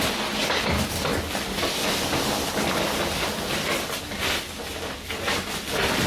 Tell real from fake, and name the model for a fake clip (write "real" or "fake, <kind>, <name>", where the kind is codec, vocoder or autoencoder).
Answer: real